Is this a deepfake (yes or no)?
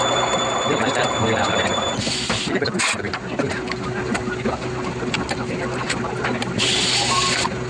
no